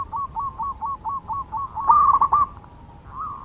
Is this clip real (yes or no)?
yes